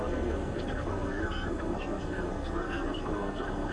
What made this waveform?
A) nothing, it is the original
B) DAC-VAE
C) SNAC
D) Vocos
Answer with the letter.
C